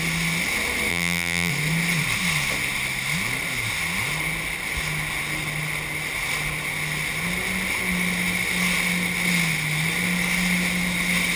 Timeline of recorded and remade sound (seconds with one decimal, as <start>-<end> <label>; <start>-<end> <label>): 0.0-0.9 recorded; 0.9-1.5 remade; 1.5-11.4 recorded